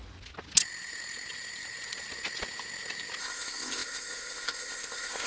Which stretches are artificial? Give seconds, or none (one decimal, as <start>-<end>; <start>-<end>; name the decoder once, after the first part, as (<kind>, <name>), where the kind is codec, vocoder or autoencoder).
3.2-5.3 (codec, ZipCodec)